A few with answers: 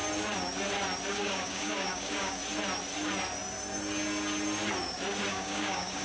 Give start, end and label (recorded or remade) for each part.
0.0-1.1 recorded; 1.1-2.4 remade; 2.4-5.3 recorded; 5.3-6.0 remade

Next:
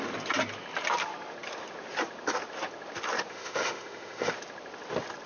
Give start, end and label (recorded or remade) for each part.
0.0-3.3 recorded; 3.3-4.3 remade; 4.3-5.3 recorded

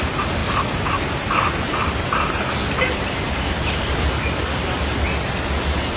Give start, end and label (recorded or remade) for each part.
0.0-6.0 recorded

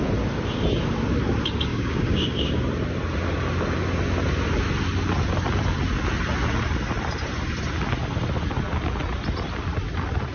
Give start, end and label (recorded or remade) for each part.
0.0-1.7 recorded; 1.7-2.6 remade; 2.6-10.3 recorded

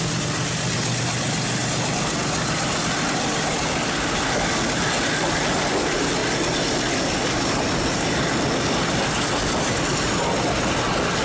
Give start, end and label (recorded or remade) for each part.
0.0-11.2 recorded

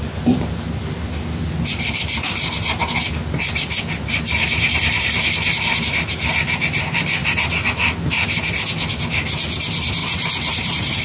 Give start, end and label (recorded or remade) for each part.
0.0-7.2 recorded; 7.2-7.7 remade; 7.7-10.0 recorded; 10.0-11.0 remade